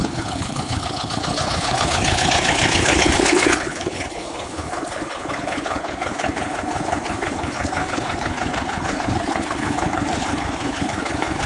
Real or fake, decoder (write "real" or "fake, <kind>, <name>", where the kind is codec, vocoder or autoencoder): fake, codec, HILCodec